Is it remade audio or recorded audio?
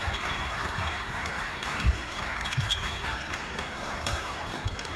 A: remade